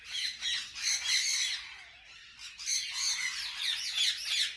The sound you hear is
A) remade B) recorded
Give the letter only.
B